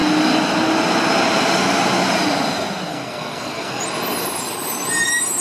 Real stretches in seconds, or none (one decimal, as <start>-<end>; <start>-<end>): 0.0-2.9; 3.8-5.4